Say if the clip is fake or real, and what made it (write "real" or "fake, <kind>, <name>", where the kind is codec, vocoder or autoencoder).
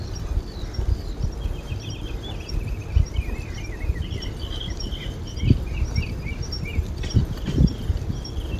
fake, vocoder, BigVGAN v2